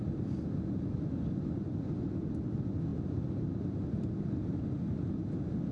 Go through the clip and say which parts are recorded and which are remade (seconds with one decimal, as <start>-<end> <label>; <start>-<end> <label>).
0.0-5.7 recorded